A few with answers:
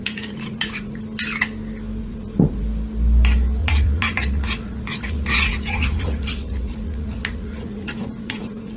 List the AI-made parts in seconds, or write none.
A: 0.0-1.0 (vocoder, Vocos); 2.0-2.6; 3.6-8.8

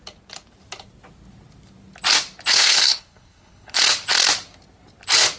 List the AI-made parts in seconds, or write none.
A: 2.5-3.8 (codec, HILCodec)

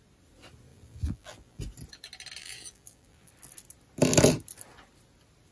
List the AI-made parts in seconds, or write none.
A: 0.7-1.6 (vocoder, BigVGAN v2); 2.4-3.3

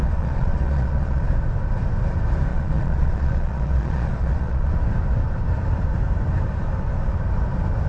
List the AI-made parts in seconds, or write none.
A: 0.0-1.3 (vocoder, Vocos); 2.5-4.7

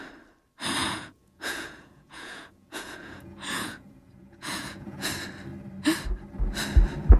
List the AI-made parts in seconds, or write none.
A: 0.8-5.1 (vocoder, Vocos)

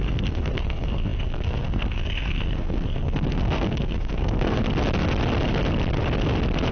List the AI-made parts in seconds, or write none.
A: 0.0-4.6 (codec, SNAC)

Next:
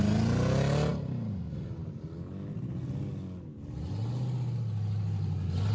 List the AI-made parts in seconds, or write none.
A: none